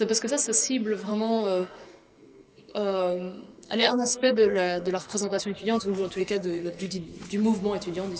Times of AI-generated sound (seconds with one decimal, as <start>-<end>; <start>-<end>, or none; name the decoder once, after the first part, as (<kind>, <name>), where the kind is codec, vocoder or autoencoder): 1.1-5.4 (codec, SNAC); 6.2-6.9